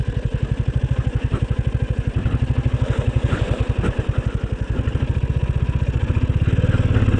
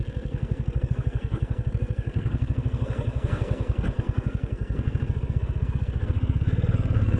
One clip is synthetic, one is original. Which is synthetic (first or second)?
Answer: second